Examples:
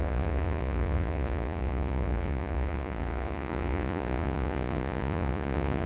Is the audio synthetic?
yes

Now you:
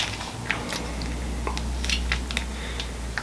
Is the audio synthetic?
no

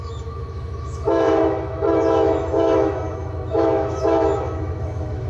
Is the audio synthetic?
yes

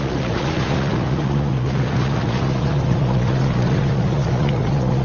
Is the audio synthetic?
yes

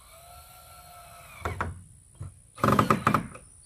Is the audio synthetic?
no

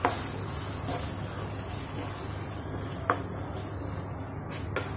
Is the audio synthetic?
no